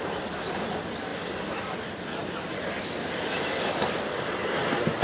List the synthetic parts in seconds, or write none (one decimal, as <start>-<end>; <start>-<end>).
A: none